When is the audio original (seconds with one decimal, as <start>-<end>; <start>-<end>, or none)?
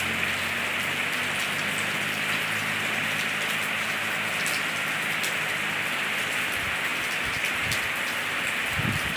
0.0-9.2